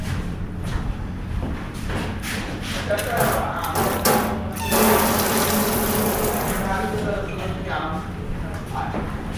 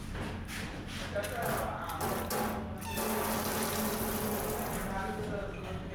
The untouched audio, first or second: second